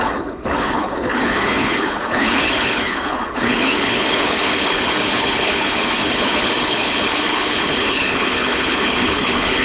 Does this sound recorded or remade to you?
remade